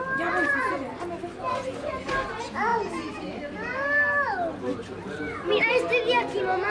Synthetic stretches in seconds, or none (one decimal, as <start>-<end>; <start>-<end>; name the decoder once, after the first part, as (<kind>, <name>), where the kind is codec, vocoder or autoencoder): none